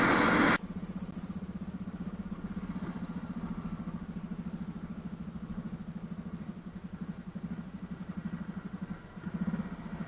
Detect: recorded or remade recorded